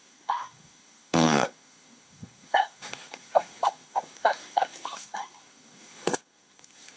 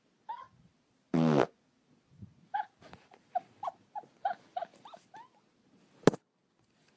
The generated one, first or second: first